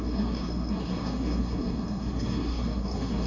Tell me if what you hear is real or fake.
fake